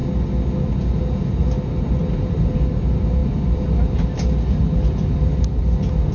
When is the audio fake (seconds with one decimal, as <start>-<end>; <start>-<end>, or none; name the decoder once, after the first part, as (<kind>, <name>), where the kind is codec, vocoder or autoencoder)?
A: none

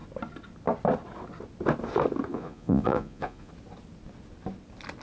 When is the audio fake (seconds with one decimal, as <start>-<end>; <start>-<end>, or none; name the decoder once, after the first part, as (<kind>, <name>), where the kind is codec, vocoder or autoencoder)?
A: 2.3-3.5 (vocoder, Vocos)